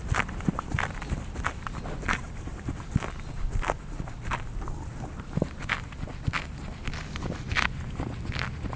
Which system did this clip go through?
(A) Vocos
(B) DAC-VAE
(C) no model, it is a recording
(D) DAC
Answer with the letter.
C